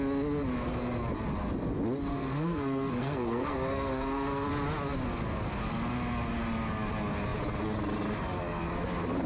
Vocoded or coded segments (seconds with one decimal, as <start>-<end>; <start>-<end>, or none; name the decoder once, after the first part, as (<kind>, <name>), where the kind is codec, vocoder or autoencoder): 2.1-4.5 (codec, SNAC)